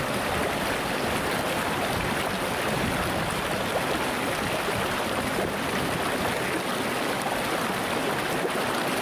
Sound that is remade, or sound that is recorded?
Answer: recorded